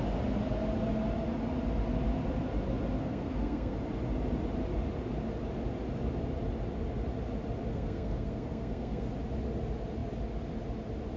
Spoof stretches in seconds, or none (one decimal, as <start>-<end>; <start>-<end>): 3.0-3.8; 7.7-9.1